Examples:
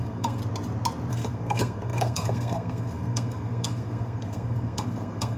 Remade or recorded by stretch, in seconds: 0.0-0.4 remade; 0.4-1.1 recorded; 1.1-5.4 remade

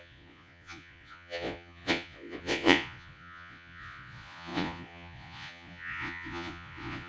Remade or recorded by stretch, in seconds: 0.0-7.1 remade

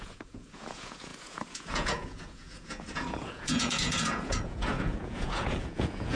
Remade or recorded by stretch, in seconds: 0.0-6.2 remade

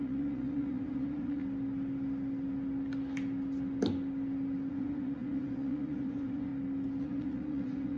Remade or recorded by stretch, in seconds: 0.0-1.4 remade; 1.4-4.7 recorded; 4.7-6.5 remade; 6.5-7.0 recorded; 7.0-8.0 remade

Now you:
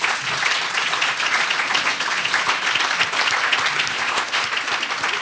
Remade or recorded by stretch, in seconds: 0.0-3.9 recorded; 3.9-4.4 remade; 4.4-5.2 recorded

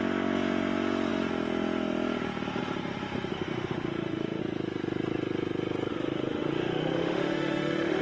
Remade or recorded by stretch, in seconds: 0.0-3.3 recorded; 3.3-4.4 remade; 4.4-5.9 recorded; 5.9-8.0 remade

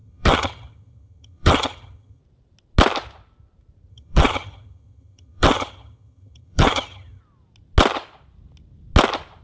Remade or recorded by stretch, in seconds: 0.0-2.2 remade; 2.2-3.9 recorded; 3.9-7.2 remade; 7.2-9.4 recorded